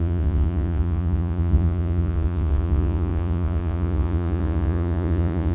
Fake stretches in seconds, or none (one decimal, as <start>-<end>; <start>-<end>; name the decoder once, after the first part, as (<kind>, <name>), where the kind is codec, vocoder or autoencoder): 0.0-5.5 (vocoder, Vocos)